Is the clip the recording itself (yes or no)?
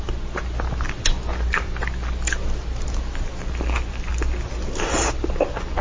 yes